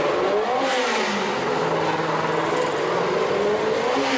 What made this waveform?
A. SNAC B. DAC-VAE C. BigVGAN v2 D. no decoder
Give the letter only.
D